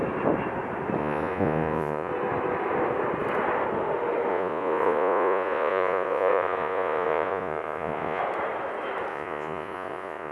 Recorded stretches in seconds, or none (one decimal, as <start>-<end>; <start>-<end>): 0.0-1.0; 2.1-4.3; 8.2-9.1